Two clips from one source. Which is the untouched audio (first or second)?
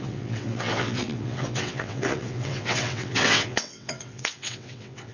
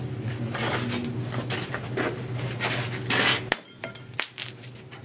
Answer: second